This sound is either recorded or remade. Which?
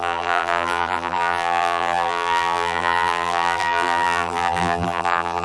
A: remade